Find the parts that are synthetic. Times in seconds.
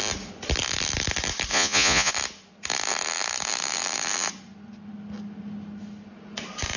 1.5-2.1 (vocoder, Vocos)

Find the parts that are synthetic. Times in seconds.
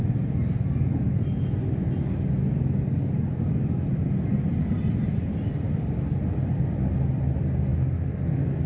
none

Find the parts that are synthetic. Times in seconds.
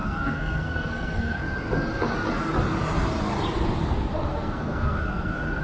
0.0-1.4 (codec, SNAC); 4.3-5.6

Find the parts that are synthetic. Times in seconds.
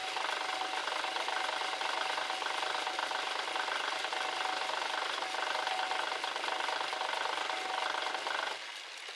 none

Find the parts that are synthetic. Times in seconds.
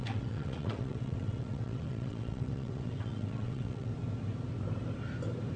0.0-3.9 (vocoder, WaveNeXt)